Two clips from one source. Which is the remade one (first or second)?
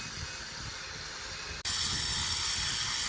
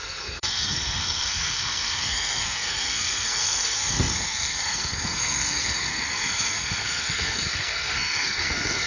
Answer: second